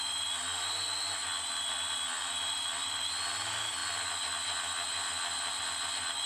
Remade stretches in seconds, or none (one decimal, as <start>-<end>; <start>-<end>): 2.2-3.0